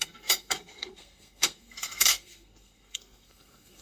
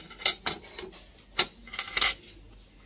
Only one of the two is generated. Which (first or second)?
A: first